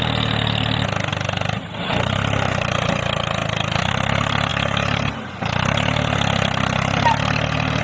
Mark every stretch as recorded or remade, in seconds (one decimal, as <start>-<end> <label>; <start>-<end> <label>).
0.0-1.1 recorded; 1.1-1.9 remade; 1.9-3.4 recorded; 3.4-3.9 remade; 3.9-4.5 recorded; 4.5-5.3 remade; 5.3-7.8 recorded